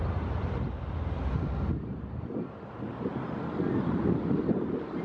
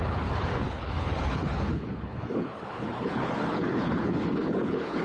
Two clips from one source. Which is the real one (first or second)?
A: first